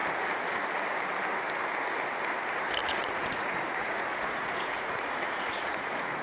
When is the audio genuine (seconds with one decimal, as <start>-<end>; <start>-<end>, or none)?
0.0-2.8